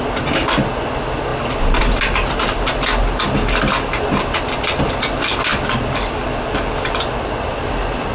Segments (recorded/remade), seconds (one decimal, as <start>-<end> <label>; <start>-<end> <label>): 0.0-8.1 recorded